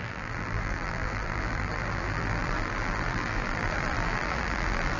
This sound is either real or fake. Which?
fake